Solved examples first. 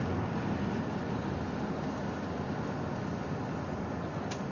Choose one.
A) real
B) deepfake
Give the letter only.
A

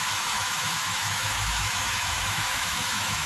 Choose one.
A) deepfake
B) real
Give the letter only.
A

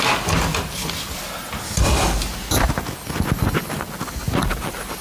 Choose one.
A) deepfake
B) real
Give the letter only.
B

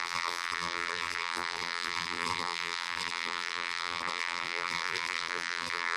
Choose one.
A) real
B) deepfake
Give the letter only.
B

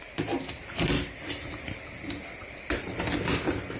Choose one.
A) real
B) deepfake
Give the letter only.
A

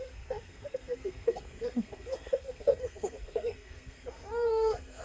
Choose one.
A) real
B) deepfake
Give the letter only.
B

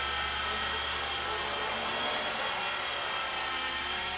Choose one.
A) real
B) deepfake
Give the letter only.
A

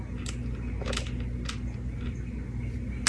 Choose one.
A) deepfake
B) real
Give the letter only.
B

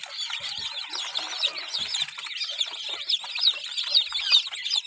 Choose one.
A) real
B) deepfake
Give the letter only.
A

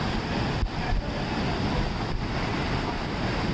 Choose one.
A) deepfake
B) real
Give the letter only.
B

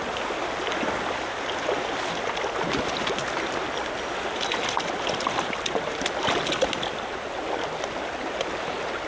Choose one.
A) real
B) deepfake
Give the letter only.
A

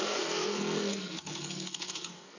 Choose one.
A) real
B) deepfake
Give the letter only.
B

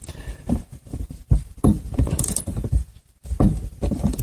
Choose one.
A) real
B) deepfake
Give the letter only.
B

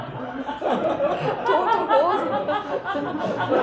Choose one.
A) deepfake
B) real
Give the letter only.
B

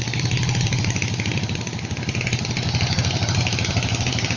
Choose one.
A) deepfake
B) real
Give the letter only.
A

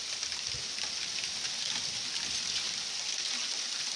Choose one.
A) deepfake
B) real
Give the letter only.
B